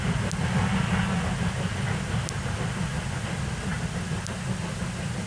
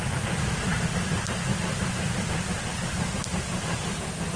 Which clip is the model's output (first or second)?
second